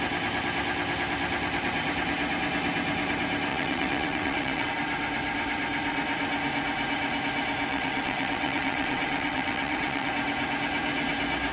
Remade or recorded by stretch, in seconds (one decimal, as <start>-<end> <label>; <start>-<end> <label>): 0.0-3.5 recorded; 3.5-4.7 remade; 4.7-7.7 recorded; 7.7-10.1 remade; 10.1-11.5 recorded